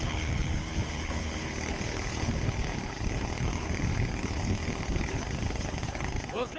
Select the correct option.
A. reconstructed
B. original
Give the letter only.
A